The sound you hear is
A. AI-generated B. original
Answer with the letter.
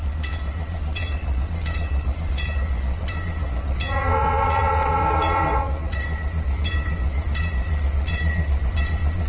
A